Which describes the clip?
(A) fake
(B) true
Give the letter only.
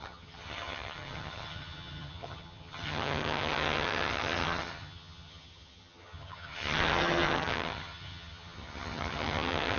A